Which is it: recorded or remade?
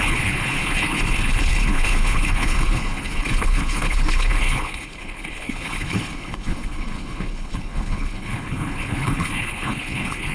remade